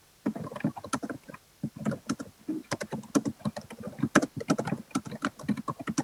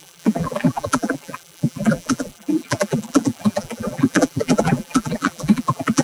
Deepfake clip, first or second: second